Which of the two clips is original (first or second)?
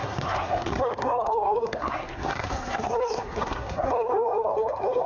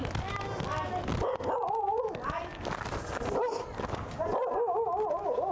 second